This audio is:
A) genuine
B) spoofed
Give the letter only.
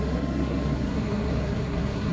B